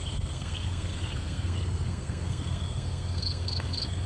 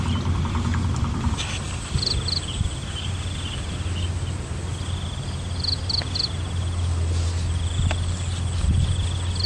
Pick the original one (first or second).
second